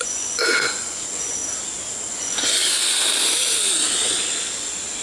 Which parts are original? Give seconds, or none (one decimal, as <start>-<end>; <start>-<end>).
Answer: 1.4-2.1; 2.6-5.0